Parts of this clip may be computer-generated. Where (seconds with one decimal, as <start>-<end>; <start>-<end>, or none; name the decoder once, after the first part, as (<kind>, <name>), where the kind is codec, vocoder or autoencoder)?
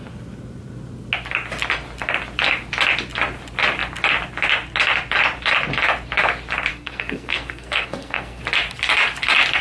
6.7-8.4 (codec, SNAC)